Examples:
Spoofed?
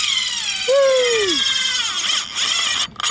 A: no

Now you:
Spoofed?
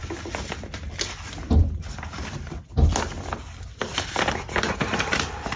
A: no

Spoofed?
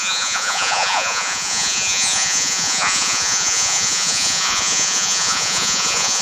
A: yes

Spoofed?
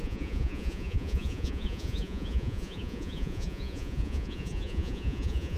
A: yes